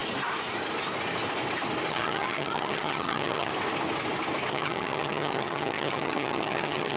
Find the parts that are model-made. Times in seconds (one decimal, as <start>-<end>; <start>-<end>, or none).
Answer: 1.9-3.5; 4.5-7.0